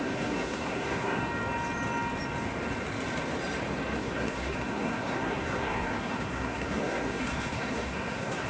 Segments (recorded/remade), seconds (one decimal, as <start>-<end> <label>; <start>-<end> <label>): 0.0-1.2 remade; 1.2-4.0 recorded; 4.0-8.5 remade